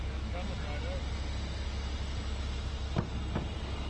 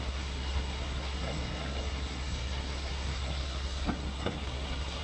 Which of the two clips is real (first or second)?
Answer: first